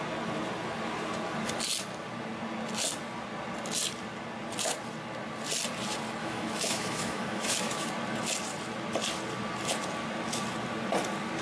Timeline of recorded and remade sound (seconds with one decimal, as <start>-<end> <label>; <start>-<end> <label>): 0.0-6.2 recorded; 6.2-7.9 remade; 7.9-11.4 recorded